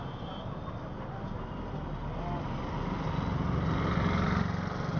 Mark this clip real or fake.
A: real